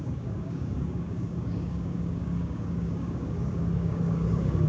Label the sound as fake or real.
fake